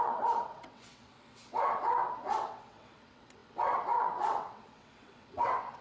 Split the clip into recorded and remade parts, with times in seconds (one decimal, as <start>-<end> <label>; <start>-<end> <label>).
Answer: 0.0-5.8 remade